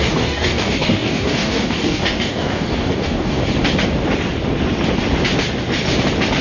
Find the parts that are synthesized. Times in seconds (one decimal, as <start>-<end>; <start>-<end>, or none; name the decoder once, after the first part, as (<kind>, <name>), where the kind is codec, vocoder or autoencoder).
0.0-3.4 (codec, DAC)